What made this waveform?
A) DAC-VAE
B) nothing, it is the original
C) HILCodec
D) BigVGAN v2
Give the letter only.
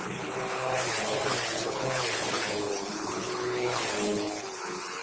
C